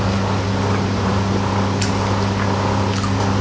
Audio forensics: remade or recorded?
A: remade